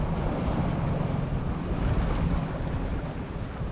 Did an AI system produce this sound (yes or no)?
no